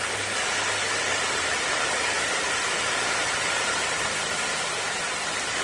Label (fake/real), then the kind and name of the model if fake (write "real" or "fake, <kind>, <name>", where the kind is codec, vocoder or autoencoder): fake, vocoder, BigVGAN v2